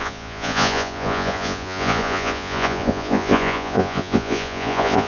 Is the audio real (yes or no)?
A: no